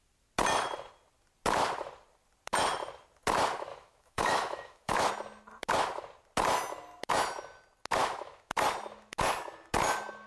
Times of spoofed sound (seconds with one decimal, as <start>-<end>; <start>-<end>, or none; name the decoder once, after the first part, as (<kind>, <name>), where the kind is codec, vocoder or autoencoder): 3.7-5.1 (autoencoder, DAC-VAE); 8.0-8.5